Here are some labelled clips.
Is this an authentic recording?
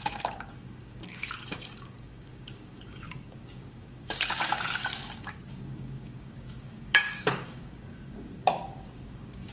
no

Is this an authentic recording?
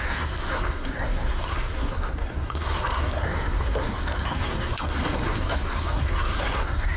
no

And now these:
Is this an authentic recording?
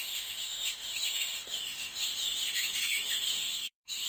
no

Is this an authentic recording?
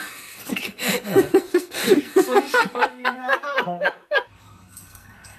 no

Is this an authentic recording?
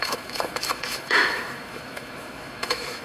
no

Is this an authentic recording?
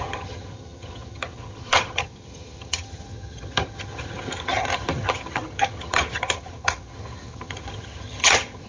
no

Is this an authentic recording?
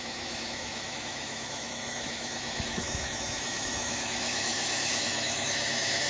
no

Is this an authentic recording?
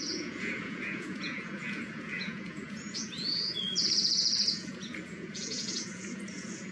no